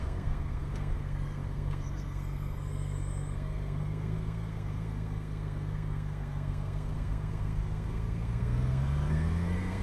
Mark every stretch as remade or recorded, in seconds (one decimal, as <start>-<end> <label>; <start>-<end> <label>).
0.0-9.8 remade